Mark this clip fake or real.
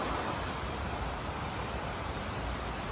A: real